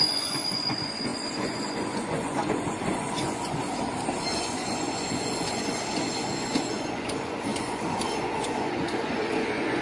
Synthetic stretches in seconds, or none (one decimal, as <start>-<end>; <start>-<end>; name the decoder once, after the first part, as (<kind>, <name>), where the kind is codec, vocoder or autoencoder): 0.0-3.6 (vocoder, Vocos); 4.3-9.8

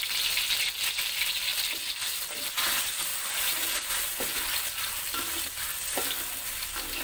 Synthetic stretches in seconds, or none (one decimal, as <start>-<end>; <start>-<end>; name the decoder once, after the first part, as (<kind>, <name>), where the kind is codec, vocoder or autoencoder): 0.0-3.1 (vocoder, BigVGAN v2); 3.7-7.0

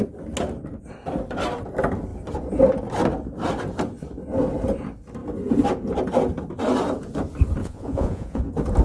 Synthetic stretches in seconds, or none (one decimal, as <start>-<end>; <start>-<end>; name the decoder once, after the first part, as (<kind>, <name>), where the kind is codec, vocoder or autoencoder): 7.6-8.4 (vocoder, Vocos)

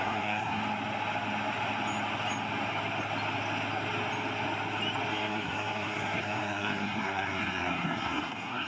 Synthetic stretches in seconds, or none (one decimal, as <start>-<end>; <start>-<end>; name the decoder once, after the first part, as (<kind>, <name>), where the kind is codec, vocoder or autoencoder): 0.0-0.6 (codec, SNAC); 5.1-8.7

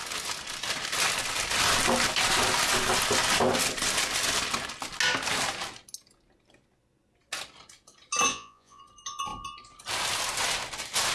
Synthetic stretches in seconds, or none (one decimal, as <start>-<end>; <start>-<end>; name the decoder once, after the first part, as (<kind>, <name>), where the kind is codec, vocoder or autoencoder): 8.3-8.8 (vocoder, Vocos)

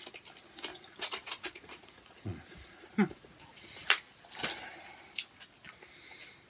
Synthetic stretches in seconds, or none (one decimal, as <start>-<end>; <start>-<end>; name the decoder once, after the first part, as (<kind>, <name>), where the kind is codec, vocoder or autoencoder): 0.7-3.9 (vocoder, Vocos)